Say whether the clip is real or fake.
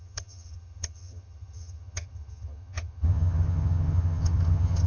fake